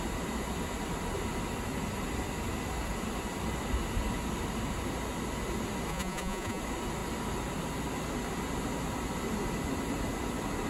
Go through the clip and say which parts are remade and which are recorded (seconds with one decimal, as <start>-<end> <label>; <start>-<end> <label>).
0.0-5.9 recorded; 5.9-6.6 remade; 6.6-10.7 recorded